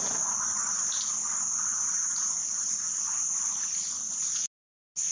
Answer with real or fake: real